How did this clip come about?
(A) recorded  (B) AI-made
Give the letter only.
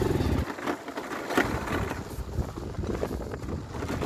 A